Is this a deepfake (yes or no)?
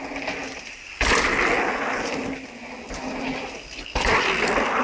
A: no